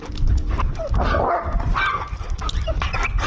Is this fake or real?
real